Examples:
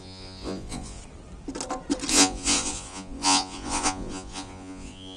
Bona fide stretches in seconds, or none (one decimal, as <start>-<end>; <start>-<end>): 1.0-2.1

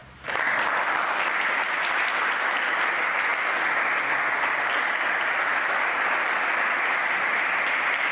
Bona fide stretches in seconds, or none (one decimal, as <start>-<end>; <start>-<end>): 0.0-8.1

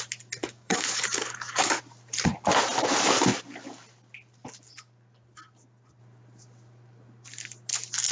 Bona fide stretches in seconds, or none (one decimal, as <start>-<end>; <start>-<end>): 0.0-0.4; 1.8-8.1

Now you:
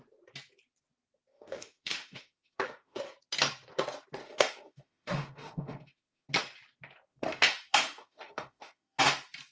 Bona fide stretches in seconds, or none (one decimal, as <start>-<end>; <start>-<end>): 0.0-1.3; 3.0-4.2; 6.3-7.1; 9.0-9.5

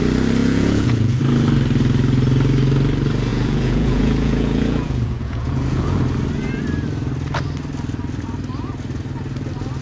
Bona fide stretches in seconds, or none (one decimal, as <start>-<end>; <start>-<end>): 0.0-0.4; 1.2-3.3; 6.0-9.8